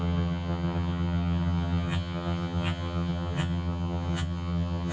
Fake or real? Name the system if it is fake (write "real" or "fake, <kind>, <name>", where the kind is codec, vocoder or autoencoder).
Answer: fake, vocoder, HiFi-GAN